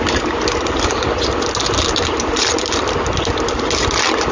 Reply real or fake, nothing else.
real